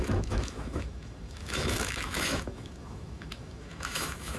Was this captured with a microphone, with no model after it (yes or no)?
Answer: no